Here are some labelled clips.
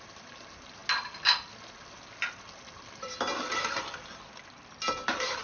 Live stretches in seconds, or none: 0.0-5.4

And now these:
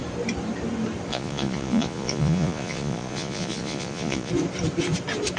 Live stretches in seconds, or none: 0.0-1.1; 4.3-5.4

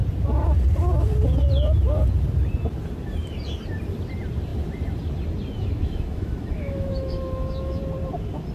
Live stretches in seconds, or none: 0.0-5.6; 7.8-8.5

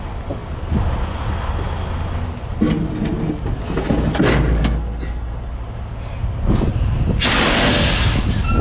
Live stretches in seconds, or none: 0.0-4.6; 5.4-8.6

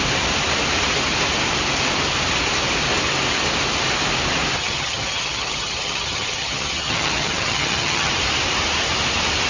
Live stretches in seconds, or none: 0.0-4.6; 8.1-9.5

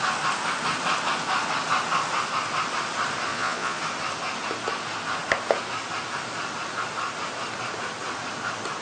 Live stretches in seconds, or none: 0.0-3.3; 3.8-8.8